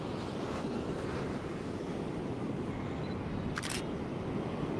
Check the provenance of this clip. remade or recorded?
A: recorded